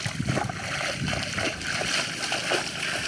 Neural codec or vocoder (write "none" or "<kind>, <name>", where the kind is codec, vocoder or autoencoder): none